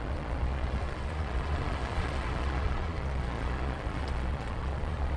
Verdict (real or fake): fake